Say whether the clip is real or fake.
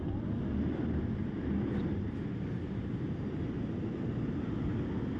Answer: fake